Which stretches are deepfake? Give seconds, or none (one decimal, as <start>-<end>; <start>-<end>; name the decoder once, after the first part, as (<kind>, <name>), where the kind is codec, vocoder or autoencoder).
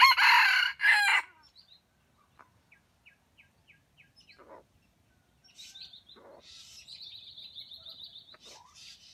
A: 1.1-2.0 (vocoder, BigVGAN v2)